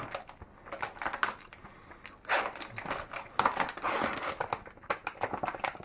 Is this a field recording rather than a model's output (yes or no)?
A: yes